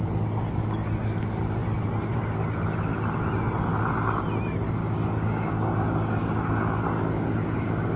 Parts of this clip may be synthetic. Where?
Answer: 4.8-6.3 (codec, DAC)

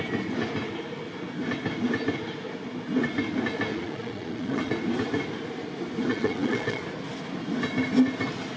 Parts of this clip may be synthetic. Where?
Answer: 3.7-4.7 (vocoder, Vocos); 6.1-6.8